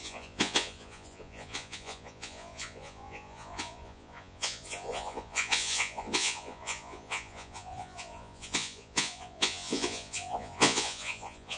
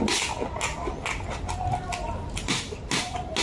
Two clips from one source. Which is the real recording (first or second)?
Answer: second